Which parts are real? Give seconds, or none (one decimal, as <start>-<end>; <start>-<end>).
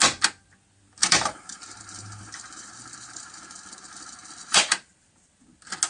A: 0.0-1.0; 3.4-4.4; 5.1-5.9